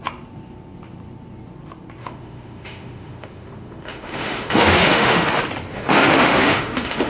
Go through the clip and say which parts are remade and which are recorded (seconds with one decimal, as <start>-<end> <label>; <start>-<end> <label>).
0.0-2.0 recorded; 2.0-5.3 remade; 5.3-5.7 recorded; 5.7-7.1 remade